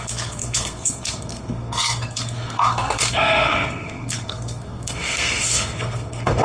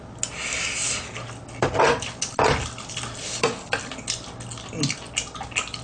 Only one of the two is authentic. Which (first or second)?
second